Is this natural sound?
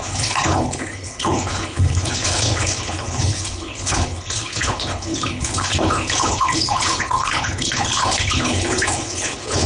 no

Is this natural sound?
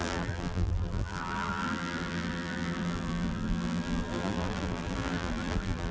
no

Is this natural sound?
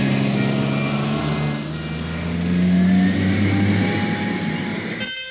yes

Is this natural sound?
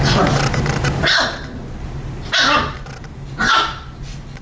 yes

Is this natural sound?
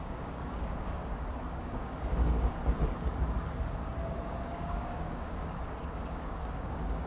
no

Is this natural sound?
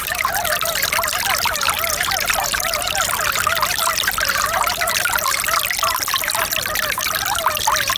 yes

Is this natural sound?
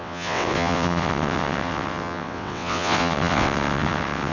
no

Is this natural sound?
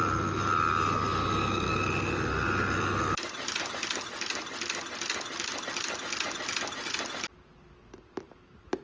yes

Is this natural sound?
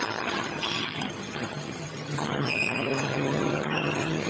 no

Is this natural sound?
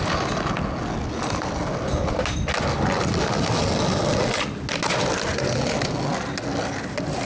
yes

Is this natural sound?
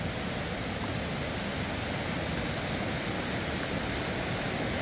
yes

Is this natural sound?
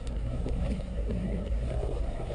no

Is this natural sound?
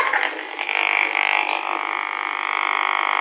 yes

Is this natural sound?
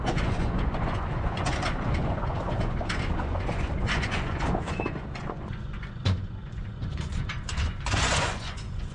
no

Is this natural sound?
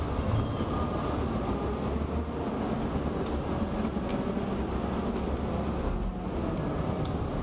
yes